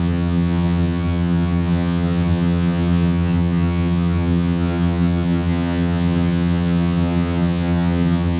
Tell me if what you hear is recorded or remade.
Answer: remade